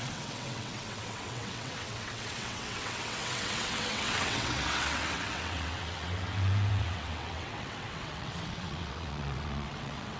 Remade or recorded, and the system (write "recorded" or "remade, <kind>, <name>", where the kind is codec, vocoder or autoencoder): remade, vocoder, WaveNeXt